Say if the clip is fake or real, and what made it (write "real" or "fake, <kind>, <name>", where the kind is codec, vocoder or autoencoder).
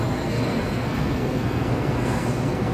fake, codec, SNAC